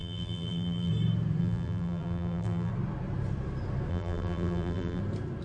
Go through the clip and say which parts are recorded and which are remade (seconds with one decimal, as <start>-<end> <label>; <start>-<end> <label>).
0.0-0.9 remade; 0.9-1.4 recorded; 1.4-2.7 remade; 2.7-3.9 recorded; 3.9-5.0 remade; 5.0-5.4 recorded